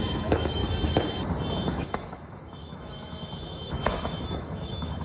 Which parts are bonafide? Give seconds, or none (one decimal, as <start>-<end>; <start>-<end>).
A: 0.6-1.5